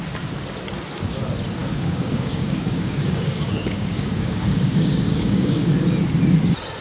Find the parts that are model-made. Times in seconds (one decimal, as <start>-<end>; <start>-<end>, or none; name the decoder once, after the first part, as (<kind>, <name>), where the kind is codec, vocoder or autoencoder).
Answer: 1.6-5.7 (codec, DAC)